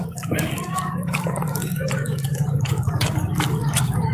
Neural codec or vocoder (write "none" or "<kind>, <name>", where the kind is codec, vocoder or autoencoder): codec, DAC